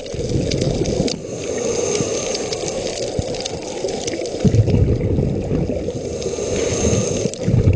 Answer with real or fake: real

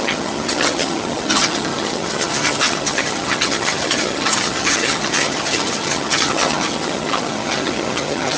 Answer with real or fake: fake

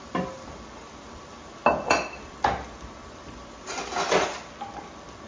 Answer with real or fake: real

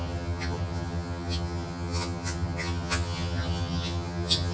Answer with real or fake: fake